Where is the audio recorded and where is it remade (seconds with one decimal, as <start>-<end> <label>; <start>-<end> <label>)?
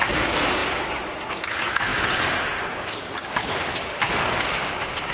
0.0-5.1 remade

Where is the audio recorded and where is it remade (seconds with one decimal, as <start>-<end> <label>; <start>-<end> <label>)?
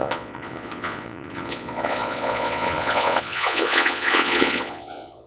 0.0-5.3 remade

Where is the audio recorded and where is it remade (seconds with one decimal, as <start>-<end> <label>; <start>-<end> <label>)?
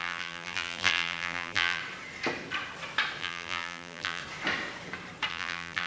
0.0-1.8 remade; 1.8-3.2 recorded; 3.2-4.2 remade; 4.2-5.3 recorded; 5.3-5.9 remade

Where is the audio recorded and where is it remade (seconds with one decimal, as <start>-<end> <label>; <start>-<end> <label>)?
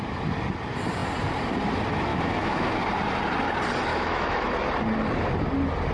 0.0-2.1 recorded; 2.1-2.8 remade; 2.8-3.9 recorded; 3.9-4.5 remade; 4.5-5.9 recorded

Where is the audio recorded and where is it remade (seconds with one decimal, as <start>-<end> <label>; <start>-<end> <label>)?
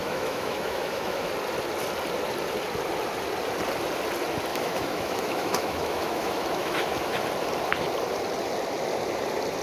0.0-1.3 remade; 1.3-4.5 recorded; 4.5-7.2 remade; 7.2-9.6 recorded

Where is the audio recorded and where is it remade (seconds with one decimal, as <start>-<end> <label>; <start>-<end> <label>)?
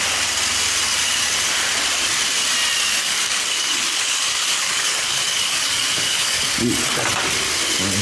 0.0-3.0 recorded; 3.0-6.4 remade; 6.4-8.0 recorded